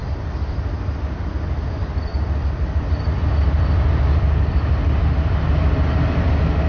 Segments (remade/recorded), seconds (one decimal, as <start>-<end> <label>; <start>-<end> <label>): 0.0-6.7 recorded